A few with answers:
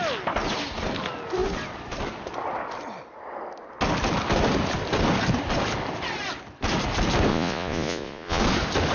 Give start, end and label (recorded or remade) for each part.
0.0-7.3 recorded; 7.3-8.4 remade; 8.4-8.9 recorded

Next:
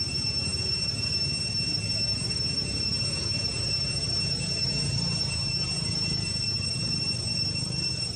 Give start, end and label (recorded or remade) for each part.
0.0-8.2 recorded

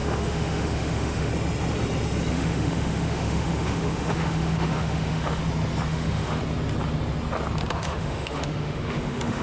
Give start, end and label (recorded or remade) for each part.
0.0-1.3 remade; 1.3-2.3 recorded; 2.3-5.4 remade; 5.4-5.9 recorded; 5.9-6.4 remade; 6.4-7.7 recorded; 7.7-9.4 remade

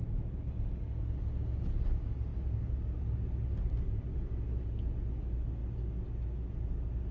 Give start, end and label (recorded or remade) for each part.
0.0-7.1 recorded

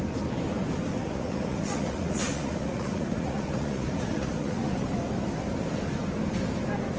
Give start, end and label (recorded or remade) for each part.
0.0-1.0 recorded; 1.0-4.9 remade; 4.9-7.0 recorded

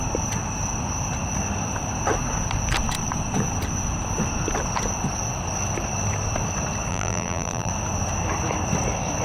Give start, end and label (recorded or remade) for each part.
0.0-6.9 recorded; 6.9-7.7 remade; 7.7-9.2 recorded

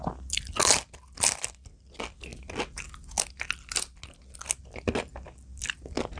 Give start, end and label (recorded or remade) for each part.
0.0-6.2 recorded

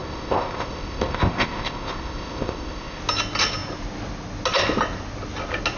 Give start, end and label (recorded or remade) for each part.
0.0-3.0 remade; 3.0-5.8 recorded